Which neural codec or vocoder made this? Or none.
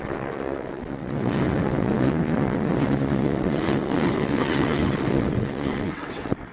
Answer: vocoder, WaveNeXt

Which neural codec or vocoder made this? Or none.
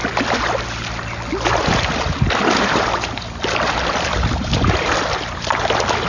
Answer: none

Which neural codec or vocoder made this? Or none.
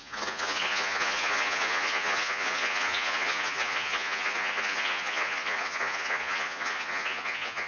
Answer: vocoder, Vocos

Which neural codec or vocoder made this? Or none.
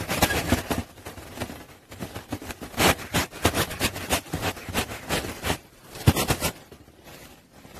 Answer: vocoder, BigVGAN v2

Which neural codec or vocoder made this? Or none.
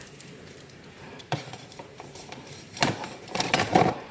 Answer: vocoder, BigVGAN v2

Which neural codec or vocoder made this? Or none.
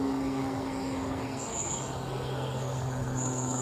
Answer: codec, SNAC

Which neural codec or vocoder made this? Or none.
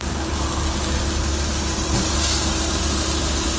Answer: none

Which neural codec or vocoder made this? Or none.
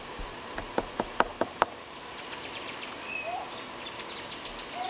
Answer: none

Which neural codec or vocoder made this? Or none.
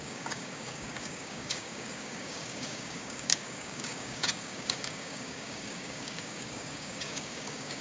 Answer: codec, DAC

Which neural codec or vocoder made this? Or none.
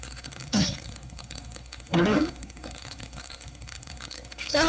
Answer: codec, SNAC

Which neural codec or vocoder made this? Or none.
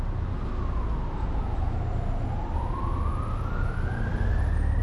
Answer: none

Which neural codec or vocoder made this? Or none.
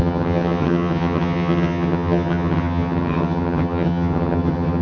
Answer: vocoder, HiFi-GAN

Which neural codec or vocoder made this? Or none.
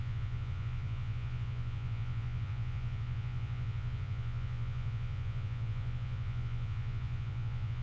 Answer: vocoder, Vocos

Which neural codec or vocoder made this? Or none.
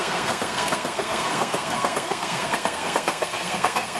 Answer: codec, SNAC